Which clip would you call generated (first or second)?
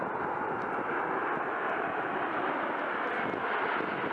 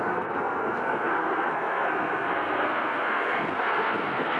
second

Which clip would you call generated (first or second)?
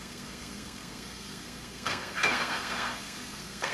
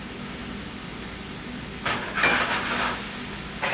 first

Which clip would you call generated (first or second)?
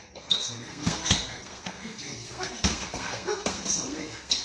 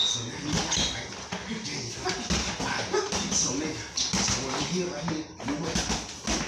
first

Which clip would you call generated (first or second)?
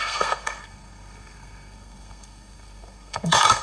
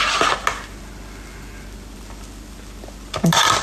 first